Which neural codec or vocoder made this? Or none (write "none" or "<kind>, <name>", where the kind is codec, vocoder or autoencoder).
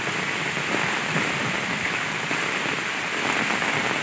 none